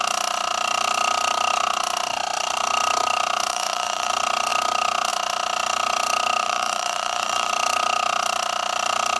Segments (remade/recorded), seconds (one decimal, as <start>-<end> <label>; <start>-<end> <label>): 0.0-3.5 recorded; 3.5-4.1 remade; 4.1-6.4 recorded; 6.4-7.5 remade; 7.5-9.2 recorded